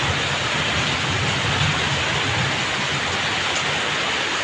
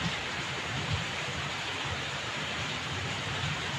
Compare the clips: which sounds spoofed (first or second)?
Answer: second